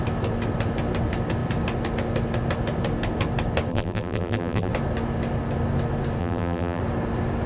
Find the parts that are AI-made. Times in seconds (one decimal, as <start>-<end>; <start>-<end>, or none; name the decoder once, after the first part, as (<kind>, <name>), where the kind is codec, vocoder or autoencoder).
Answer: 3.7-4.7 (vocoder, BigVGAN v2); 6.2-6.8